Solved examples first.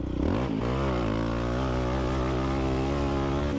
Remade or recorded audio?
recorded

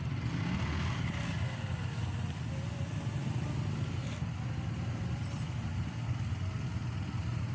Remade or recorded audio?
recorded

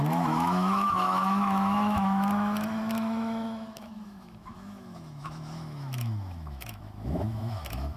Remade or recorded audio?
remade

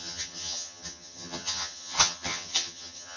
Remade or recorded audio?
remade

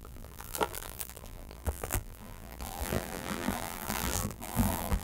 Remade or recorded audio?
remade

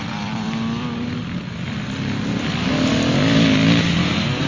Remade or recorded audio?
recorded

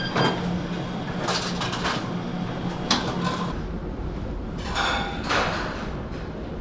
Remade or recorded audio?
recorded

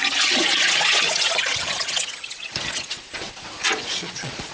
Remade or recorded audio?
remade